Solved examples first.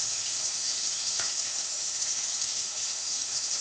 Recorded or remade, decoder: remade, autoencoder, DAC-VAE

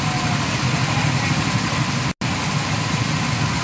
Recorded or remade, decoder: recorded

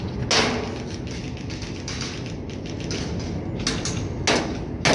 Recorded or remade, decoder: recorded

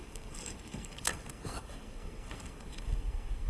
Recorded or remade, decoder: remade, codec, SNAC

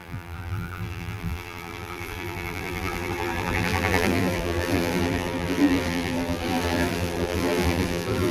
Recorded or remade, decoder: remade, vocoder, BigVGAN v2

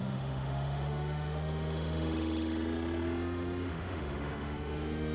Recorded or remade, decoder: remade, autoencoder, DAC-VAE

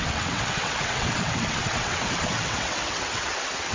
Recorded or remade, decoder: remade, vocoder, WaveNeXt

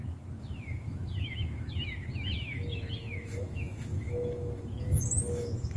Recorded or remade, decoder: remade, autoencoder, DAC-VAE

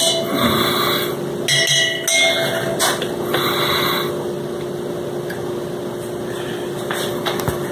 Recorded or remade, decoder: recorded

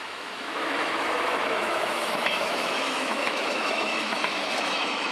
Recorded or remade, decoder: remade, autoencoder, DAC-VAE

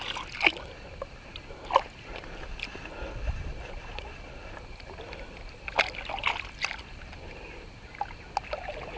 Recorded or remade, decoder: recorded